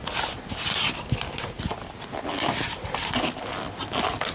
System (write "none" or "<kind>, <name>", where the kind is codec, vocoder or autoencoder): none